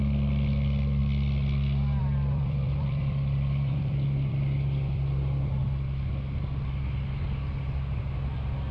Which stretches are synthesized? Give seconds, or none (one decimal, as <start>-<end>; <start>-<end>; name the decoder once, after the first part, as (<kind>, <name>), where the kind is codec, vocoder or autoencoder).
0.0-1.0 (vocoder, BigVGAN v2); 2.0-5.6